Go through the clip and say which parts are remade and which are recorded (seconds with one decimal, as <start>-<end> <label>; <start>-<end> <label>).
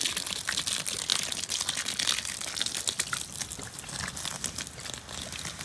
0.0-5.6 recorded